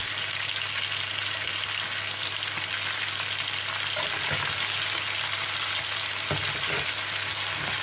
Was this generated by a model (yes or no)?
no